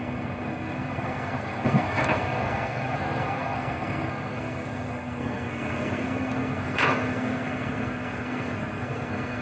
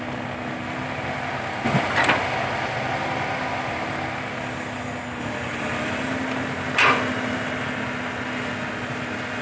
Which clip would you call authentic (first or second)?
second